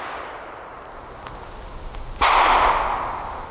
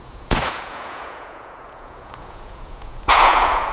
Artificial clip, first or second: second